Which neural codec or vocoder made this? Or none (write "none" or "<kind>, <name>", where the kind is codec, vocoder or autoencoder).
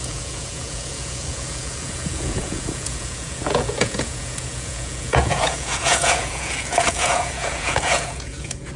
vocoder, Vocos